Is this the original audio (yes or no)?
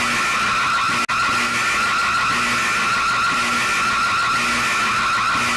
yes